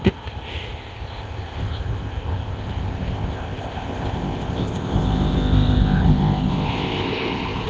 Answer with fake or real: fake